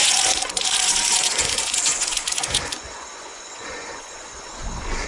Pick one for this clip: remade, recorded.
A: remade